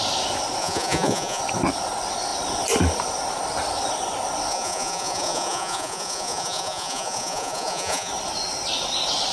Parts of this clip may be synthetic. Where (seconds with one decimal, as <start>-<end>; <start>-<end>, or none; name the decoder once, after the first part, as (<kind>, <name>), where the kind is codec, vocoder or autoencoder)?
0.6-1.4 (vocoder, Vocos); 4.5-8.1